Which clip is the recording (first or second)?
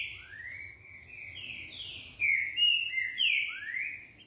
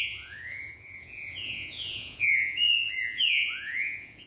first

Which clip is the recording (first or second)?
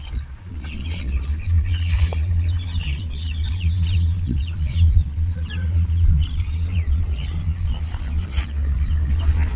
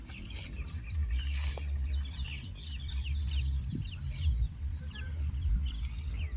second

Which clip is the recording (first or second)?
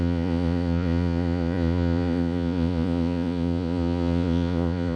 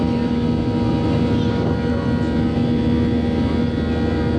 second